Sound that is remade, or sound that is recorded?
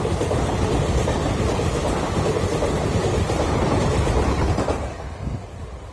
recorded